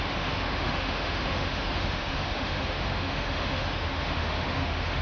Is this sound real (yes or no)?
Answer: no